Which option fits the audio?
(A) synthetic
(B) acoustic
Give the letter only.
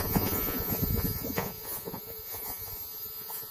A